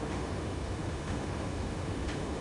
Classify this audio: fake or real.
fake